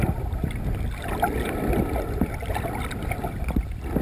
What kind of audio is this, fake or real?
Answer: real